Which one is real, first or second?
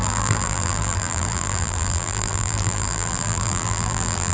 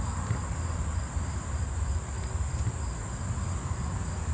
second